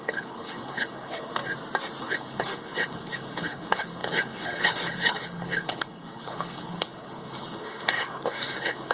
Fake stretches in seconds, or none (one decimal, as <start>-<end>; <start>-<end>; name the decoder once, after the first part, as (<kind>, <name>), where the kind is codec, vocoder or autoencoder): 0.0-1.4 (codec, HILCodec); 2.0-8.9